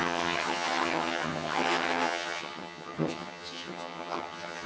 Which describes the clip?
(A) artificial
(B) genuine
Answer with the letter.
A